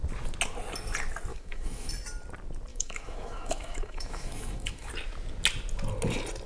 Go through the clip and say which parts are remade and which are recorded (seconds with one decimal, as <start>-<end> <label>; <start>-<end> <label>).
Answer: 0.0-1.3 recorded; 1.3-1.9 remade; 1.9-2.7 recorded; 2.7-4.9 remade; 4.9-6.5 recorded